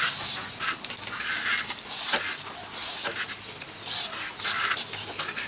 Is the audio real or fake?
real